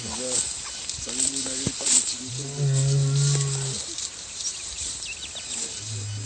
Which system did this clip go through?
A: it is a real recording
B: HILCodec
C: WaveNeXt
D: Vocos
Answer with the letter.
A